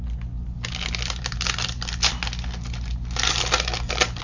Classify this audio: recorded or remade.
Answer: recorded